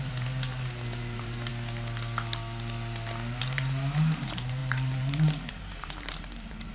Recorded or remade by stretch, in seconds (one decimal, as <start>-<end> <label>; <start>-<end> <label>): 0.0-1.5 remade; 1.5-3.4 recorded; 3.4-6.7 remade